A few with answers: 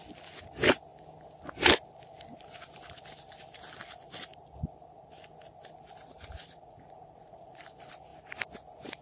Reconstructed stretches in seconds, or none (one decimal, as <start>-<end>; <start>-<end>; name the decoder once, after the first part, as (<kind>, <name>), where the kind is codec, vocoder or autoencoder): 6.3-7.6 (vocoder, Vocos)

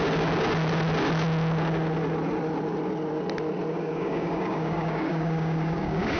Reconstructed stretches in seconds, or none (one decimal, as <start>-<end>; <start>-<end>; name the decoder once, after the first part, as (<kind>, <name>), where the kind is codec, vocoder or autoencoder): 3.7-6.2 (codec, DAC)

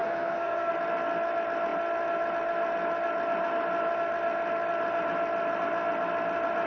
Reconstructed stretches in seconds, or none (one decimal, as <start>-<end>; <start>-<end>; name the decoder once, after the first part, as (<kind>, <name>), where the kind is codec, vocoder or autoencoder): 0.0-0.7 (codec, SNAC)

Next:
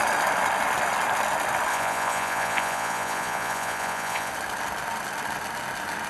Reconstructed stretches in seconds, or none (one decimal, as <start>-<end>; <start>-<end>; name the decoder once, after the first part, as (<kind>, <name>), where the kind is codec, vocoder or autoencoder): 1.7-4.3 (vocoder, Vocos)